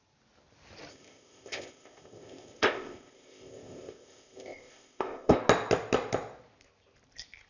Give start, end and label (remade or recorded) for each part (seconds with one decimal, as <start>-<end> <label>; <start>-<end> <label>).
0.0-0.9 recorded; 0.9-5.4 remade; 5.4-7.5 recorded